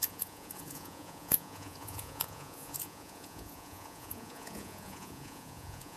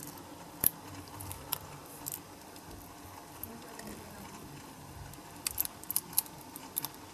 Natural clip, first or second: second